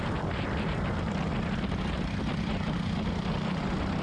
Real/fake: real